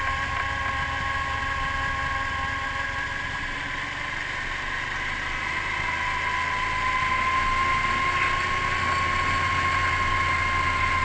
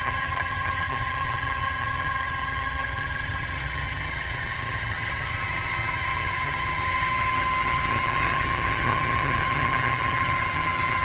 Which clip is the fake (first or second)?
second